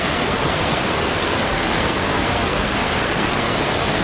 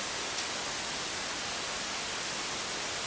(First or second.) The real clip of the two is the second